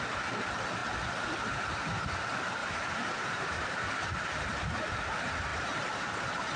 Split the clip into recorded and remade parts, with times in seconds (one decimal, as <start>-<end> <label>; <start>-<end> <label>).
0.0-2.6 recorded; 2.6-4.6 remade; 4.6-5.5 recorded; 5.5-6.0 remade; 6.0-6.6 recorded